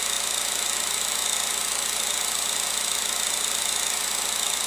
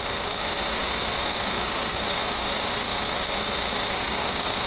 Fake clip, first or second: second